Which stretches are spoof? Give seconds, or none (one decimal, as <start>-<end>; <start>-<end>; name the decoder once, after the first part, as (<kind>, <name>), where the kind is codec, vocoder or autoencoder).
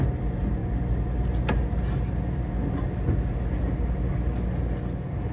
none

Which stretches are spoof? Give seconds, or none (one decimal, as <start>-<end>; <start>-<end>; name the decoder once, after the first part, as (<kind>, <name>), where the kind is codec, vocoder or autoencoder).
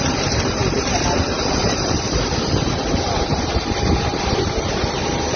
none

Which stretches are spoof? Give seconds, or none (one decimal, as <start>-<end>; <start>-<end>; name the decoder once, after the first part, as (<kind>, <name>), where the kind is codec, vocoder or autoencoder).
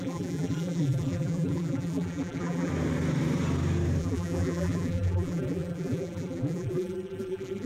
0.0-2.7 (vocoder, BigVGAN v2); 4.0-7.7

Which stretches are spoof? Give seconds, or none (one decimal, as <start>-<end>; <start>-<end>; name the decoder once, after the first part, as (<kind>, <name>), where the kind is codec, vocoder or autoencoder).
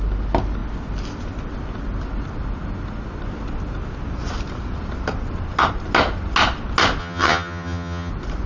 7.0-8.1 (vocoder, HiFi-GAN)